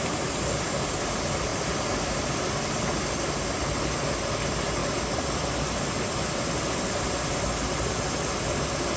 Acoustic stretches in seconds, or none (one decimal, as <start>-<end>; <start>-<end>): 0.0-9.0